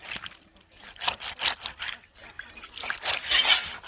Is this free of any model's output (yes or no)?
yes